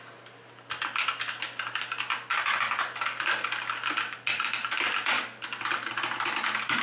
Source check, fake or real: real